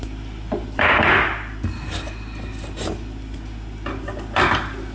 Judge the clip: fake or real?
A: real